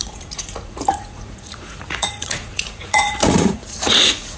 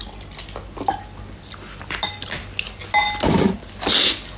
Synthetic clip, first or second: first